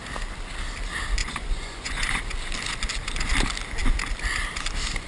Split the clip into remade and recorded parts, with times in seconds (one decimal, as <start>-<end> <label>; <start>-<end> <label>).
0.0-1.2 recorded; 1.2-2.2 remade; 2.2-5.1 recorded